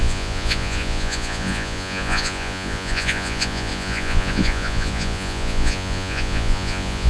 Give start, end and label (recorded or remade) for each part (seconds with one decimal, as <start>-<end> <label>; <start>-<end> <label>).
0.0-7.1 remade